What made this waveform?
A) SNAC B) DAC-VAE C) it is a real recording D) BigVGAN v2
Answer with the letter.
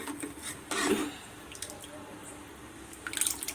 C